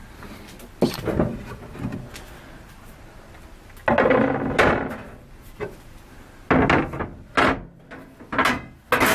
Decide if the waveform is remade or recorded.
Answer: recorded